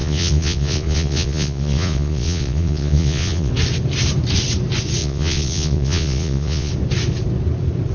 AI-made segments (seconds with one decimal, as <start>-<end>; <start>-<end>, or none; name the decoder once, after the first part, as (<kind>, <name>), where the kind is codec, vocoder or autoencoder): 0.0-3.5 (vocoder, Vocos); 5.0-6.7